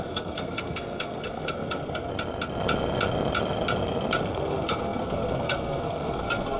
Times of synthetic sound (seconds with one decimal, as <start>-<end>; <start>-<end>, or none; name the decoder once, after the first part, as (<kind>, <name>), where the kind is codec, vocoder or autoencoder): 0.0-2.1 (codec, SNAC); 4.2-6.6